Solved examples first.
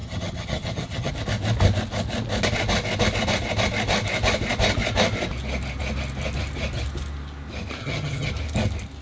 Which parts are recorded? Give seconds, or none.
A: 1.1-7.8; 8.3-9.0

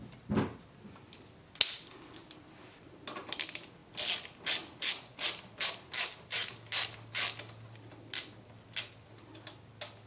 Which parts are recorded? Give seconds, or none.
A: 0.0-10.1

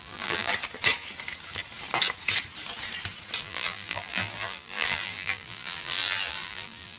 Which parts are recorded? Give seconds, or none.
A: 0.5-3.4

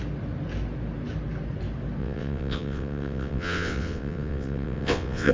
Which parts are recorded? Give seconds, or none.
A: 0.0-2.0